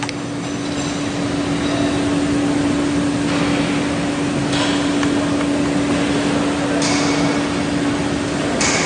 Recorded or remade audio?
recorded